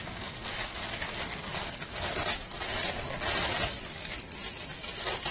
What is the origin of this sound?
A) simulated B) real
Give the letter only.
B